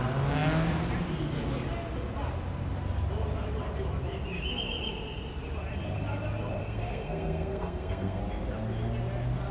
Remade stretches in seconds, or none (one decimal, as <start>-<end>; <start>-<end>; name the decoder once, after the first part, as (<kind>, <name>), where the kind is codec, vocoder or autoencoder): 6.6-8.2 (codec, SNAC)